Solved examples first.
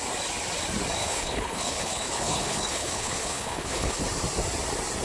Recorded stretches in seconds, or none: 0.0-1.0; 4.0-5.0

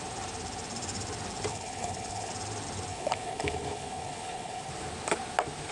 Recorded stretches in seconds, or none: 0.0-1.5; 2.3-2.9; 4.7-5.7

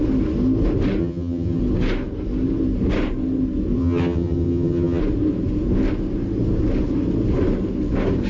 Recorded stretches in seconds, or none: 0.0-1.0; 1.6-3.8; 5.0-8.3

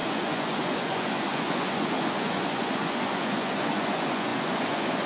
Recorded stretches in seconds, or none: none

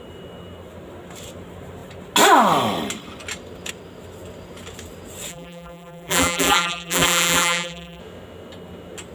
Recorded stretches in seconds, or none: 0.0-5.3; 8.0-9.1

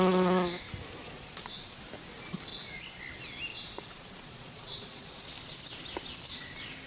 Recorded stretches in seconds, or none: 0.0-1.0; 1.8-2.5; 3.0-3.5; 5.3-6.9

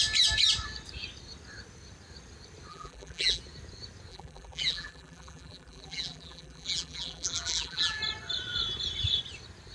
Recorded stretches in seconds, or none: 0.0-2.7; 3.4-4.1; 8.0-9.7